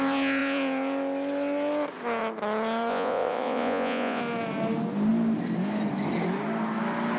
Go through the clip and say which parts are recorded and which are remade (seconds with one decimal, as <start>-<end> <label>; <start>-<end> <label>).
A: 0.0-2.9 recorded; 2.9-4.2 remade; 4.2-7.2 recorded